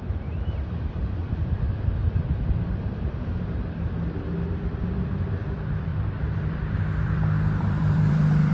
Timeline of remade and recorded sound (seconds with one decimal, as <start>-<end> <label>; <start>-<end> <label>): 0.0-8.5 remade